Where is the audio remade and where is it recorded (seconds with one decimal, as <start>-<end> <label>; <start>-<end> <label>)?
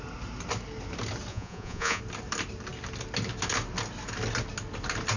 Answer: 0.0-1.3 recorded; 1.3-2.0 remade; 2.0-5.2 recorded